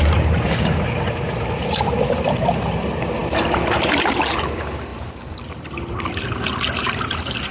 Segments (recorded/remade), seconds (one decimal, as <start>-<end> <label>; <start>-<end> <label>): 0.0-4.9 remade; 4.9-6.8 recorded; 6.8-7.5 remade